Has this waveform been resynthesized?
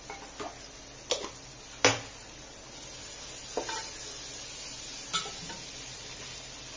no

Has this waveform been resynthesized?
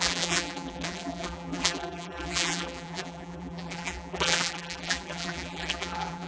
yes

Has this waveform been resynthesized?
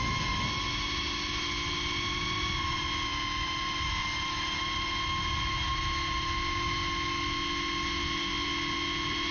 no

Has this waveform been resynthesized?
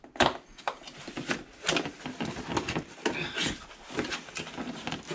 no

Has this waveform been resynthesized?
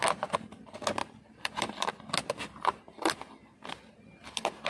no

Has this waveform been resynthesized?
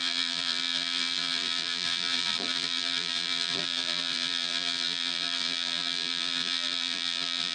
yes